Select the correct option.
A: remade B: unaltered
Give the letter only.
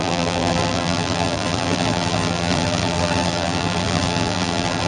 A